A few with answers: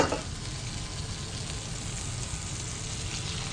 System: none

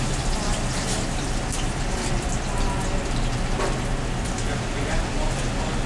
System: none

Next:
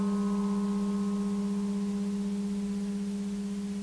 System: none